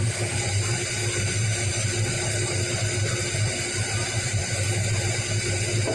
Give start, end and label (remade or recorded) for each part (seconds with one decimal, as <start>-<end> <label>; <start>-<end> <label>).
0.0-5.9 recorded